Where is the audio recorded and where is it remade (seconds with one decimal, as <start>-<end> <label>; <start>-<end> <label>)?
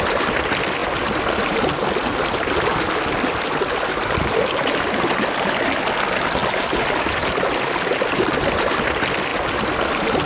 0.0-10.3 recorded